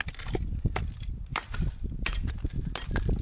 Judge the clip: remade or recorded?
recorded